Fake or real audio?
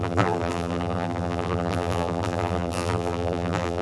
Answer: fake